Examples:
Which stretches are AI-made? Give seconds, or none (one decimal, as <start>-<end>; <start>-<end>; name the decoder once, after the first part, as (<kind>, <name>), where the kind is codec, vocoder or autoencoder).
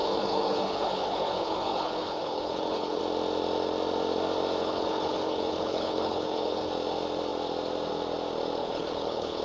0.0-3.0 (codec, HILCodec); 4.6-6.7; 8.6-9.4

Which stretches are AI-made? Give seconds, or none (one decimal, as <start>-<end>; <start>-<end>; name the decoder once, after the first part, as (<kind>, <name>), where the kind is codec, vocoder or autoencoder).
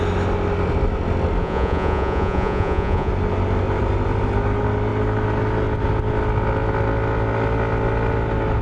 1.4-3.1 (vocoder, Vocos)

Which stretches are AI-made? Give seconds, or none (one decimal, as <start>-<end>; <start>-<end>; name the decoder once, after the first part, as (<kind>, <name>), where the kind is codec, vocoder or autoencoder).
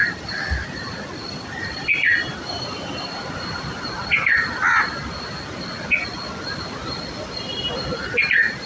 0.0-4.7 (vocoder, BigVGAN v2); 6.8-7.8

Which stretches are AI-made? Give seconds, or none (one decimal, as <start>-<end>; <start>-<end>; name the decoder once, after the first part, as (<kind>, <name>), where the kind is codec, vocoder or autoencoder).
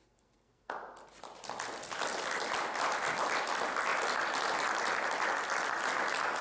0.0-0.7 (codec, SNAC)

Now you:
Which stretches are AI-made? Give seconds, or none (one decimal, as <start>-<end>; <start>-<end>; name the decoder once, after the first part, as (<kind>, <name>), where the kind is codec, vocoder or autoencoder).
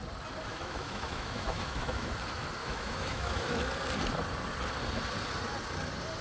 0.5-2.1 (autoencoder, DAC-VAE); 2.6-3.7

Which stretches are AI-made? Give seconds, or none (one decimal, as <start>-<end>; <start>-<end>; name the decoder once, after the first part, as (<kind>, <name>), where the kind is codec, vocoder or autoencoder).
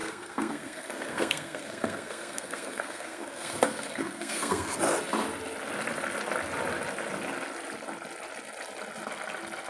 0.0-4.8 (codec, SNAC)